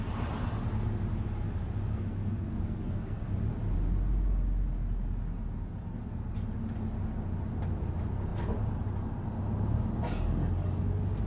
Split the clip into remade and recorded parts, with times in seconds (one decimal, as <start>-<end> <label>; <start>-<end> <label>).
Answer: 0.0-1.9 recorded; 1.9-3.3 remade; 3.3-11.3 recorded